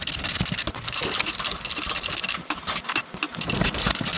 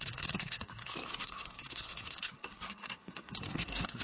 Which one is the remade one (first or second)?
second